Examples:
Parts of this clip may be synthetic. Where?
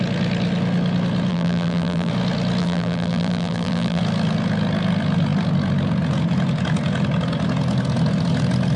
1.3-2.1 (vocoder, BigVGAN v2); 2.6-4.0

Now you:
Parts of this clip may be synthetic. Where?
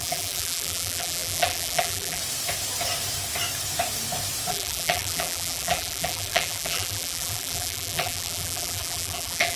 0.0-2.2 (vocoder, BigVGAN v2); 4.5-9.6